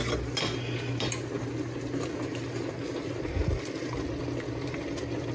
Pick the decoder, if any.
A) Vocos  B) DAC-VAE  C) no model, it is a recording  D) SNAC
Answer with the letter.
C